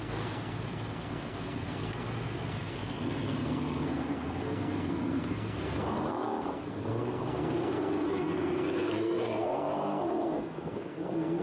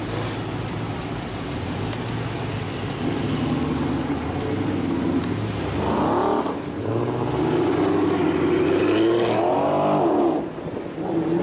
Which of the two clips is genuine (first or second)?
second